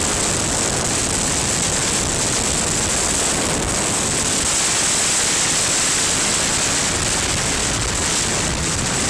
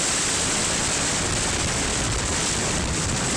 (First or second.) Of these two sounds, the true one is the first